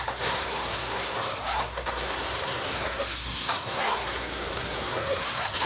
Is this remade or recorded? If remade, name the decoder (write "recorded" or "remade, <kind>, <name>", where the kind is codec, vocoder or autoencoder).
remade, codec, SNAC